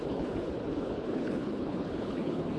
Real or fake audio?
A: fake